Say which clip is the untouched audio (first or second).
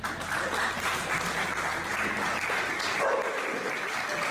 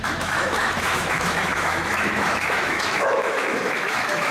first